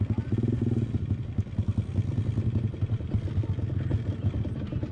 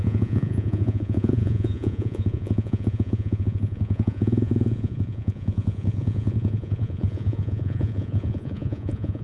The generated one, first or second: second